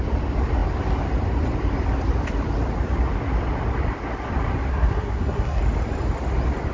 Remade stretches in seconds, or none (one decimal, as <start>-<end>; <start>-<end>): 4.7-5.6